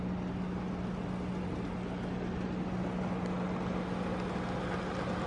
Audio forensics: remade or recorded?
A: recorded